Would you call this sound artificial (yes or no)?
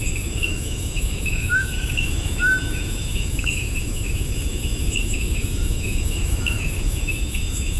yes